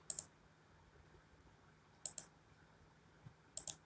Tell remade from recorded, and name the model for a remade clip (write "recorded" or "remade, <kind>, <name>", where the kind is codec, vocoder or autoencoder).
recorded